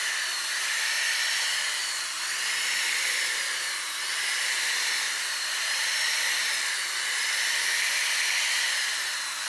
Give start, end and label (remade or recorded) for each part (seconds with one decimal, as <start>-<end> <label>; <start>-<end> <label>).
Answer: 0.0-9.5 recorded